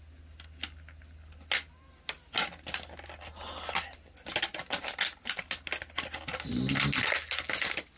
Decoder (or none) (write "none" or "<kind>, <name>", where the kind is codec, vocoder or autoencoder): none